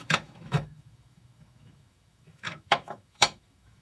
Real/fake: fake